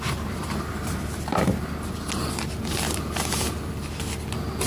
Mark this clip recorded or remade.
recorded